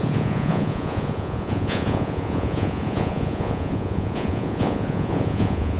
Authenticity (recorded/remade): remade